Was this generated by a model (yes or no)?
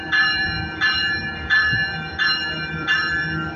yes